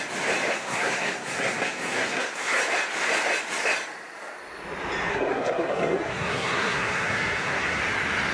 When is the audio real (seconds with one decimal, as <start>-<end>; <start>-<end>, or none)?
0.0-0.5; 2.6-5.1; 7.8-8.3